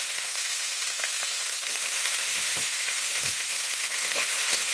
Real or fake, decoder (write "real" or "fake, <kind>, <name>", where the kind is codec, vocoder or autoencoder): fake, autoencoder, DAC-VAE